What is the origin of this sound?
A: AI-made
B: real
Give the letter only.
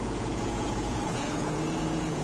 A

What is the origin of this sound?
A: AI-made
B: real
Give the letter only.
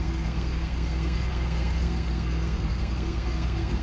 A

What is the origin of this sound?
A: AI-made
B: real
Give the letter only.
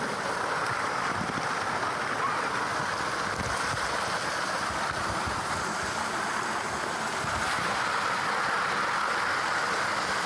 B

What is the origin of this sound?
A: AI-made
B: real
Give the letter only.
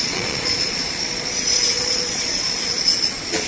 A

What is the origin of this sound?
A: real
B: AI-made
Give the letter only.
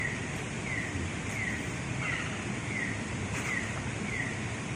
A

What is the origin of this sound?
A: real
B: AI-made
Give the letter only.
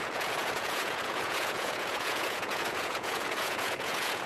B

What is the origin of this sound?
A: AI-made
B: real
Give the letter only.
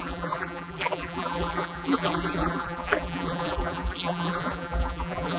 A